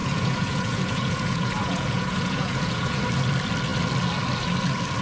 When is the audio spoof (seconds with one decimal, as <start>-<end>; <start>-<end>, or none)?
0.0-3.0

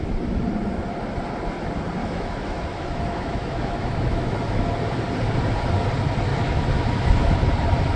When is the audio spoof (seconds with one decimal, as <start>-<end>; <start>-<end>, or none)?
2.0-4.7; 6.3-7.4

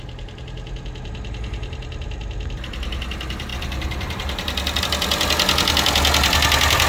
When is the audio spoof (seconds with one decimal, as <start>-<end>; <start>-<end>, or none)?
none

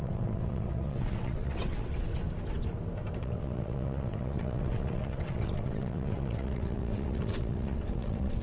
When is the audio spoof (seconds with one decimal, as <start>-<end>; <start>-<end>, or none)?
0.0-2.1; 3.2-8.4

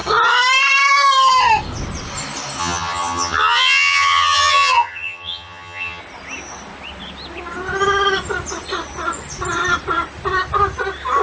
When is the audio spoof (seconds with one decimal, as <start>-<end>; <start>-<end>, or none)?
2.6-6.0